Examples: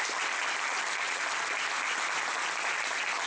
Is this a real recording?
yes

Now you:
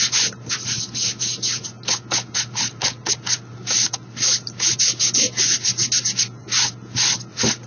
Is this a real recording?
yes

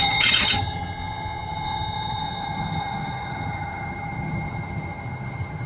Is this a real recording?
no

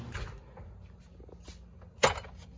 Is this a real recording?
yes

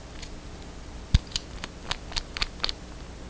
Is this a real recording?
yes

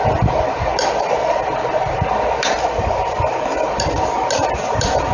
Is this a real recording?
yes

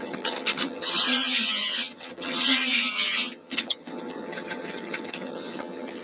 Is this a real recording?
no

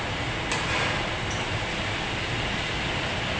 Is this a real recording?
yes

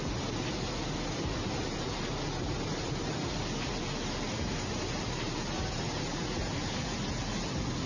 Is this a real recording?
yes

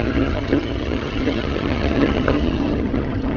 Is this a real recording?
no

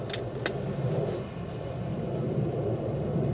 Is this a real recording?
yes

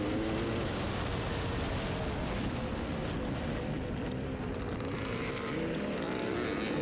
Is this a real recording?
yes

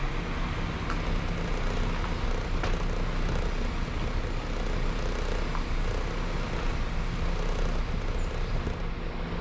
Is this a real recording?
yes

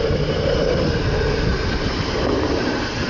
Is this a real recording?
yes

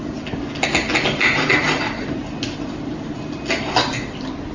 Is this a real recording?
yes